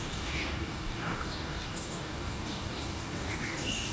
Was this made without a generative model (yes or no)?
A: no